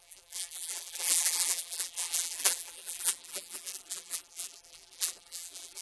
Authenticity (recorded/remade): remade